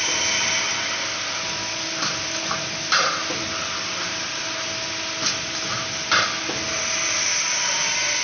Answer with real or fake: real